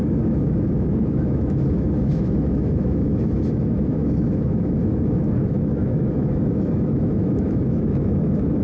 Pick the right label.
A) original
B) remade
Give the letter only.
B